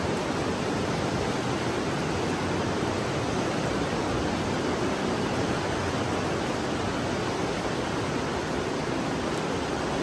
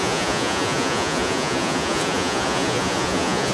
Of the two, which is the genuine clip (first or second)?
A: first